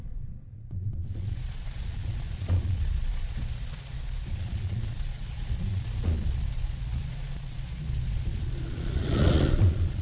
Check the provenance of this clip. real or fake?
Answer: fake